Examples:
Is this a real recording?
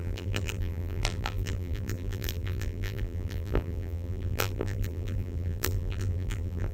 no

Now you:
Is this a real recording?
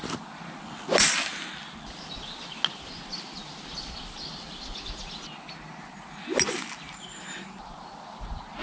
yes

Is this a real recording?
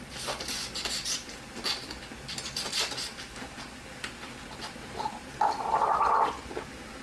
yes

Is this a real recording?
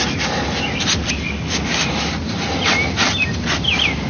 yes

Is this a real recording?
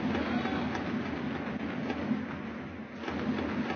yes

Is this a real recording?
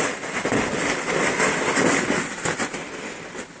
no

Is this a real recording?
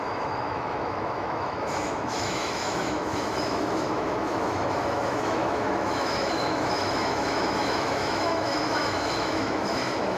no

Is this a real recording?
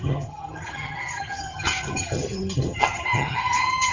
no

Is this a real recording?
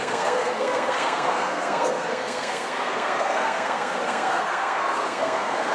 no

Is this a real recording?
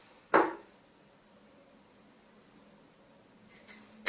yes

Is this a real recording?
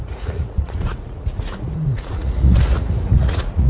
no